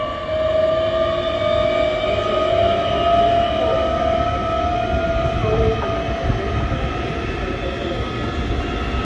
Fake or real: real